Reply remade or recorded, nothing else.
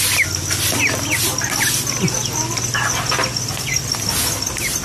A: recorded